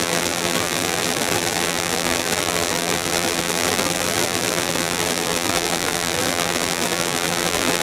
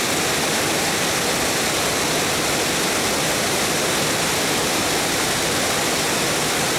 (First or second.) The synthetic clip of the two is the first